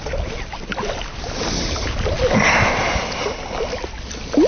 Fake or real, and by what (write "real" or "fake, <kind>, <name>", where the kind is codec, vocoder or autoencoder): real